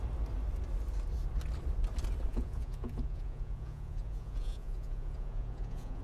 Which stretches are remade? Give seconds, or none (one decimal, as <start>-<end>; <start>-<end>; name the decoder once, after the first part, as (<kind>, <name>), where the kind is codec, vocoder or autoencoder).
2.3-6.0 (vocoder, Vocos)